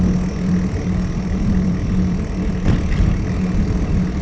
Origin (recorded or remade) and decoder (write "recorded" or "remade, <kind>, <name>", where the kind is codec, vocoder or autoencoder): recorded